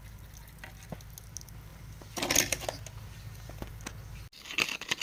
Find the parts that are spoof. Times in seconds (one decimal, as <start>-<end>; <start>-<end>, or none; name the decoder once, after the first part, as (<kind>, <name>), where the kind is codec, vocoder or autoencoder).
none